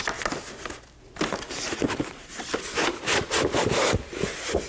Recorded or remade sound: recorded